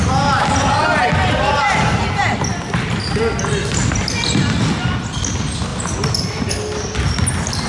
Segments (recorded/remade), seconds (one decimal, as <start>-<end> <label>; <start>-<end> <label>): 0.0-7.7 recorded